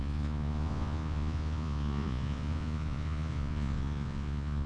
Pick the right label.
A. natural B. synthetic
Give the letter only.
B